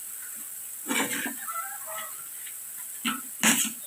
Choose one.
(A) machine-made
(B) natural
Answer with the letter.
B